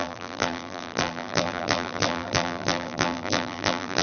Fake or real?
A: fake